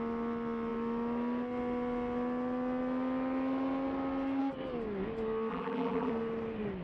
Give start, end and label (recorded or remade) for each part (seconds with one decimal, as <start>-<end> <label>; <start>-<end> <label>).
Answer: 0.0-5.5 recorded; 5.5-6.1 remade; 6.1-6.8 recorded

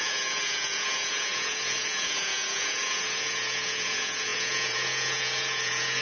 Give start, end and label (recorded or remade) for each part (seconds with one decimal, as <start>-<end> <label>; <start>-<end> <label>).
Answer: 0.0-6.0 remade

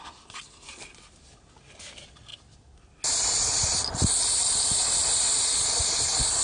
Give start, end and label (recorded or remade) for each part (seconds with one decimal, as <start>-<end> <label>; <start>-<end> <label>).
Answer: 0.0-6.4 recorded

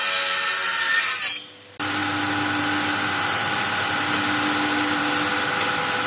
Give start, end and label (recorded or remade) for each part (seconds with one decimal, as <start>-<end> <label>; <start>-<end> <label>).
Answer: 0.0-6.1 recorded

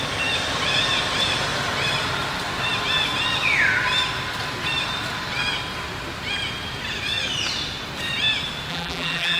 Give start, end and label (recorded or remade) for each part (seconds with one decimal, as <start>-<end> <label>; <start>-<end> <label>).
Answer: 0.0-8.7 recorded; 8.7-9.4 remade

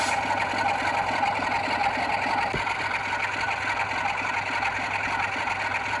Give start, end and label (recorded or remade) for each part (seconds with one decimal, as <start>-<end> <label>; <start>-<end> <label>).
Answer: 0.0-6.0 recorded